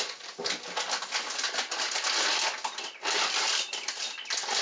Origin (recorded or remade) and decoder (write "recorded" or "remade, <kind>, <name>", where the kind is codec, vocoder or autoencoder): recorded